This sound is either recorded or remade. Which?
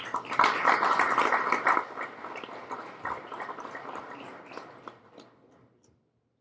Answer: recorded